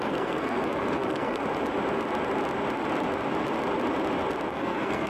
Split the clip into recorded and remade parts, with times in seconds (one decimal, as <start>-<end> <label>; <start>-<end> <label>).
0.0-1.4 remade; 1.4-4.5 recorded; 4.5-5.1 remade